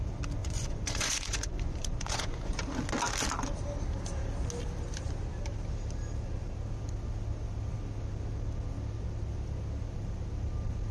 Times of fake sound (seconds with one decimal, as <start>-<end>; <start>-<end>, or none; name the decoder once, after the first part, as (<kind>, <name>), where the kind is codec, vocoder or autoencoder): 0.4-2.6 (vocoder, Vocos)